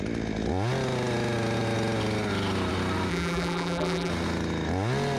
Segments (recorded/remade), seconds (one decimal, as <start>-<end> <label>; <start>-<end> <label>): 0.0-3.1 recorded; 3.1-4.1 remade; 4.1-5.2 recorded